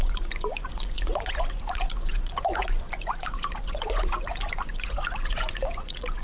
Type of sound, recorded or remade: remade